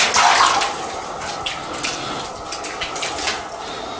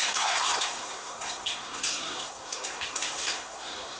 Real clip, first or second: first